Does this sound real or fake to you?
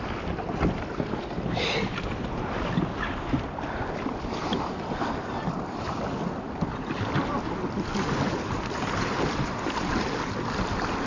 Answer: real